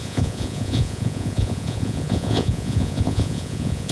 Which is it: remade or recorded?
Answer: remade